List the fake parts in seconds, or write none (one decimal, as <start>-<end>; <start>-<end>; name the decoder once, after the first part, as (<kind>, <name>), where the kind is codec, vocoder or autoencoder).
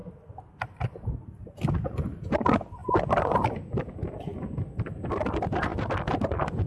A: 0.0-1.5 (vocoder, BigVGAN v2)